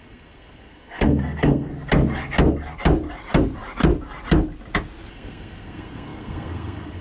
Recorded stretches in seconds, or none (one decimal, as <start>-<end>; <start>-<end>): 1.7-5.1